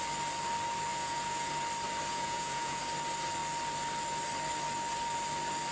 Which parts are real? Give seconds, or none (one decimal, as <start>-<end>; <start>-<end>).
0.0-0.9; 1.5-2.1; 2.8-5.7